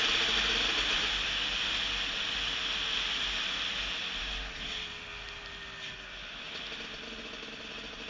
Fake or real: real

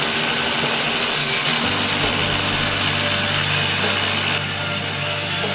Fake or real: real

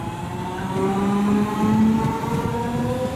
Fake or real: real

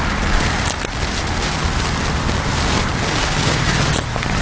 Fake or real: real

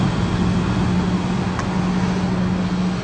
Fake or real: real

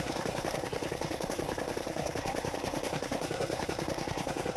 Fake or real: fake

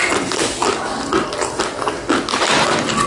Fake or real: real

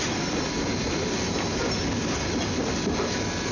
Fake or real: real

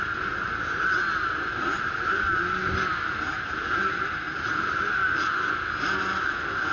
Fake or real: real